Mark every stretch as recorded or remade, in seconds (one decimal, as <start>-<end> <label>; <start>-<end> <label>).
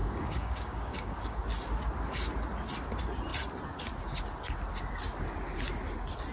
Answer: 0.0-1.4 remade; 1.4-6.3 recorded